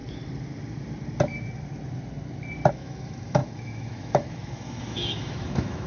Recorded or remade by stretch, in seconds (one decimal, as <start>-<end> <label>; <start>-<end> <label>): 0.0-2.7 recorded; 2.7-5.9 remade